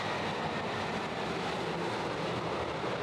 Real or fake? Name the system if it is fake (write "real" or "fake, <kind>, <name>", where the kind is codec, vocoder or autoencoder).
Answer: real